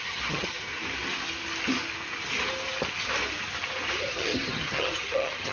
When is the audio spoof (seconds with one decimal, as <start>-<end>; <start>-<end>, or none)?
0.0-0.7; 4.0-5.5